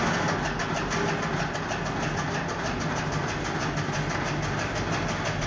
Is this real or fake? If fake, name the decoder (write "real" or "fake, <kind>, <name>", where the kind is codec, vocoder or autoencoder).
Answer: real